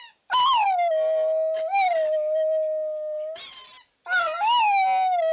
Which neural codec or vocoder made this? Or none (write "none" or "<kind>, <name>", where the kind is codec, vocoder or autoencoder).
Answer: none